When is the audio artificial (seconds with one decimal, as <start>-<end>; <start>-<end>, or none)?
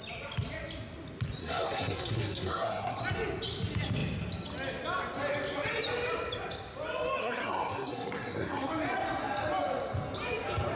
1.4-3.0; 7.2-8.7